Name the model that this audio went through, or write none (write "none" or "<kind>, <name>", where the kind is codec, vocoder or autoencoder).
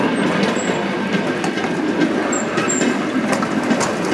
none